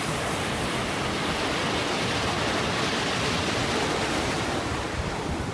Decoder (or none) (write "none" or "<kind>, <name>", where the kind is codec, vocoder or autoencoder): none